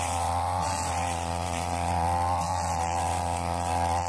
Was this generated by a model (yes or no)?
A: yes